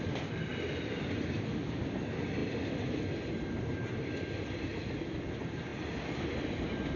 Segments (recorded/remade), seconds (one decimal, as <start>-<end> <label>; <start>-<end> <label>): 0.0-7.0 recorded

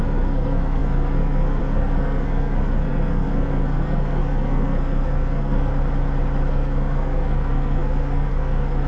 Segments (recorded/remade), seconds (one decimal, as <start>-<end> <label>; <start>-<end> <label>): 0.0-5.7 remade; 5.7-6.5 recorded; 6.5-8.9 remade